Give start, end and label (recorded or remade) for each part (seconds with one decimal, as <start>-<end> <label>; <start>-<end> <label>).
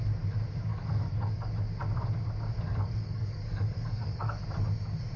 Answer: 0.0-0.7 recorded; 0.7-1.5 remade; 1.5-2.7 recorded; 2.7-4.4 remade; 4.4-5.2 recorded